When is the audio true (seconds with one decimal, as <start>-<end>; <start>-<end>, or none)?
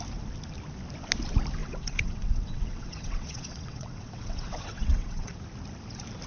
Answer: 0.0-1.6; 5.4-6.3